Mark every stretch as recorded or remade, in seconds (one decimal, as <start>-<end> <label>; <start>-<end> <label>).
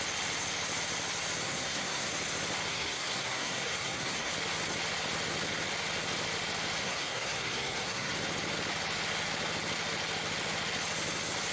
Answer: 0.0-1.4 recorded; 1.4-2.1 remade; 2.1-2.7 recorded; 2.7-4.3 remade; 4.3-6.8 recorded; 6.8-8.1 remade; 8.1-11.5 recorded